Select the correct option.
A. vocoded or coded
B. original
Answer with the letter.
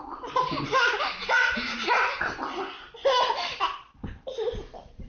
B